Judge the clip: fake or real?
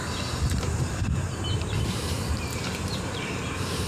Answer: fake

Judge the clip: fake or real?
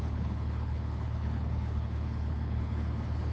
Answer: fake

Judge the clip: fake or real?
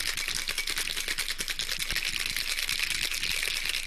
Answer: real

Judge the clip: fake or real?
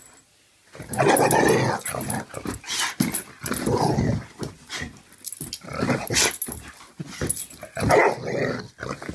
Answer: real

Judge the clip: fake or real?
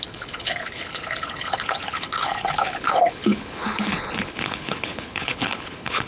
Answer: fake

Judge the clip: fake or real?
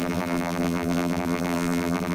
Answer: fake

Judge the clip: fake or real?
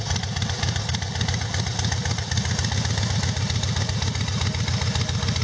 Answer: real